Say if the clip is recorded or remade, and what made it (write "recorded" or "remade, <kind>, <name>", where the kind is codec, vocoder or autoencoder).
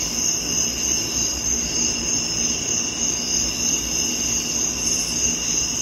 recorded